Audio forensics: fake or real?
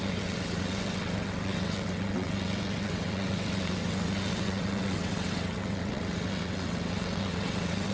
fake